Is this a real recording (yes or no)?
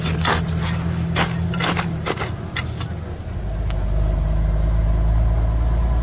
yes